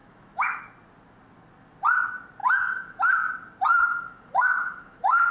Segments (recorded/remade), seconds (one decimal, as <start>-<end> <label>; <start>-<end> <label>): 0.0-0.6 remade; 0.6-2.4 recorded; 2.4-3.0 remade; 3.0-3.7 recorded; 3.7-5.3 remade